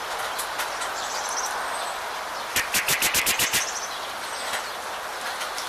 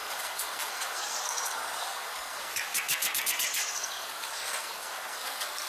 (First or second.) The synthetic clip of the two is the second